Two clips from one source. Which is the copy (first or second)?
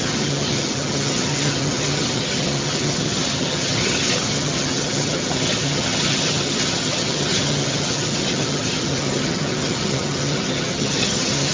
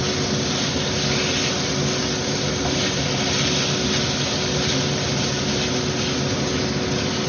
first